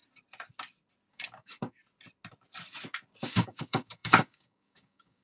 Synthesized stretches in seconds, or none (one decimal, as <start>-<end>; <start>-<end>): 1.1-1.8; 3.2-5.2

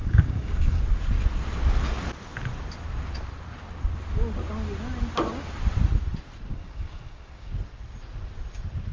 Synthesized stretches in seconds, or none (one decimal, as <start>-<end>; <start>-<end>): 0.0-0.8; 6.5-7.5

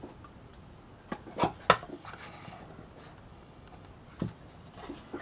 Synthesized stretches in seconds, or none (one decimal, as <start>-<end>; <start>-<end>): 1.9-2.6; 3.3-3.9